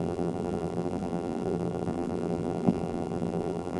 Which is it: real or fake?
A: fake